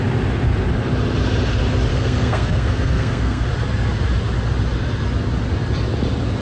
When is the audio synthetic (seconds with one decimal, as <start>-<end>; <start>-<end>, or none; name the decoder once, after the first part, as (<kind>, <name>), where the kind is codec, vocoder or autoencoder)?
1.9-3.5 (codec, SNAC)